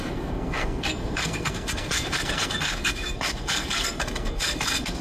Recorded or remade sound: remade